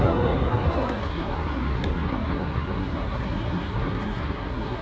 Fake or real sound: fake